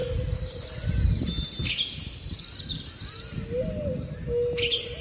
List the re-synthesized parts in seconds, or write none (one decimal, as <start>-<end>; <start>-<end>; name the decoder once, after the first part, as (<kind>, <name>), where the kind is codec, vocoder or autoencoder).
none